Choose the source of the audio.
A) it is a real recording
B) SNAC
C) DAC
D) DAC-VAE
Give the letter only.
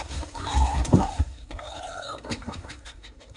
B